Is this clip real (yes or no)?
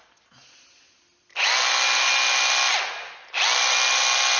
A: yes